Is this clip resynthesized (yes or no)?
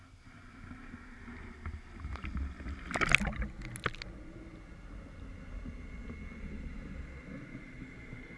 no